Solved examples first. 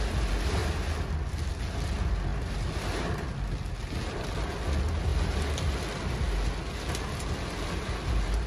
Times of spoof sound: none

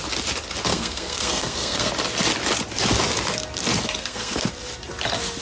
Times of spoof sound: 0.7-1.9 (codec, SNAC); 4.0-4.5

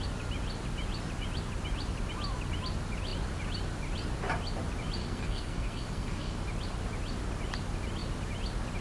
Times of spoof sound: 5.0-6.4 (codec, SNAC)